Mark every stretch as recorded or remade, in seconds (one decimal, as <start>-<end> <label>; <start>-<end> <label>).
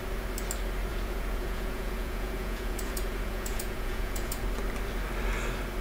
0.0-0.9 recorded; 0.9-4.4 remade; 4.4-5.8 recorded